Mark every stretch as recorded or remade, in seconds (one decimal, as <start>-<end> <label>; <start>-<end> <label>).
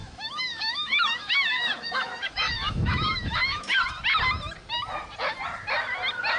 0.0-3.8 remade; 3.8-6.4 recorded